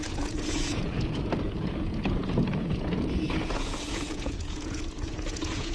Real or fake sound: fake